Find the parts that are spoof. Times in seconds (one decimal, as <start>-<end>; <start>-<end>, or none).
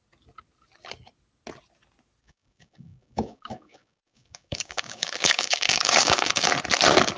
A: 2.2-6.5